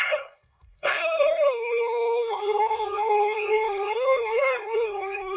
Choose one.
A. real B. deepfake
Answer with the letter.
B